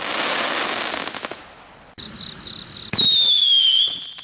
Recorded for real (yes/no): yes